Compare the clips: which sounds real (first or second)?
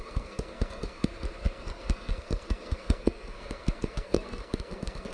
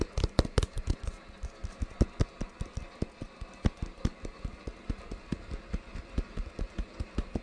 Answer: second